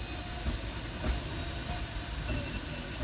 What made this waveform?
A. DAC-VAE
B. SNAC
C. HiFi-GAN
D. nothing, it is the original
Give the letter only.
D